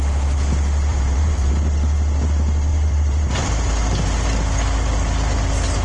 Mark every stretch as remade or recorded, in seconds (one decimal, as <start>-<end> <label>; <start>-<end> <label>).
0.0-0.9 recorded; 0.9-1.5 remade; 1.5-2.7 recorded; 2.7-3.7 remade; 3.7-5.8 recorded